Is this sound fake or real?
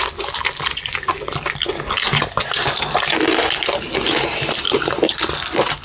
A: real